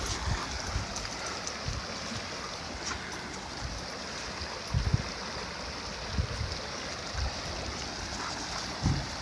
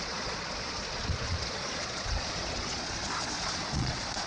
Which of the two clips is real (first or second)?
first